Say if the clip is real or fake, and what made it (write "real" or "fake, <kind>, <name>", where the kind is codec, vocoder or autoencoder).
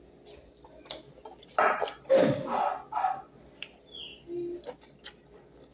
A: real